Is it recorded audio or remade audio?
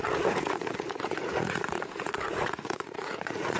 remade